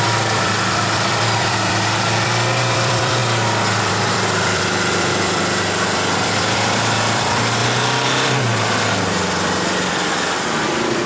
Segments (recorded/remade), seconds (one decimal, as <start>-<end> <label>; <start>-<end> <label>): 0.0-3.2 remade; 3.2-3.9 recorded; 3.9-7.6 remade; 7.6-8.4 recorded; 8.4-11.1 remade

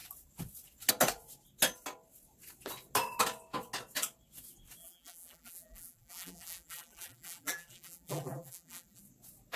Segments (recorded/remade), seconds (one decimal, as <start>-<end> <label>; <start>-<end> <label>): 0.0-4.8 recorded; 4.8-9.0 remade; 9.0-9.6 recorded